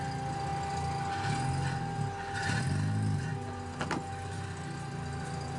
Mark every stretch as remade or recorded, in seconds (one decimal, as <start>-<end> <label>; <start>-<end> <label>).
0.0-5.6 recorded

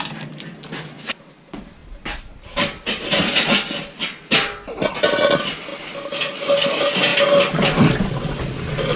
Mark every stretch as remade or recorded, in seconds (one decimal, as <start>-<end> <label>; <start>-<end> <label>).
0.0-9.0 recorded